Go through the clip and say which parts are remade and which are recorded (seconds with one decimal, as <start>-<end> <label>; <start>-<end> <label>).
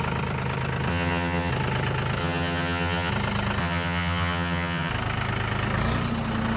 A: 0.0-0.9 recorded; 0.9-1.5 remade; 1.5-2.2 recorded; 2.2-3.1 remade; 3.1-3.6 recorded; 3.6-4.9 remade; 4.9-6.6 recorded